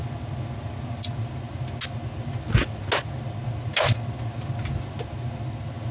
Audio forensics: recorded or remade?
recorded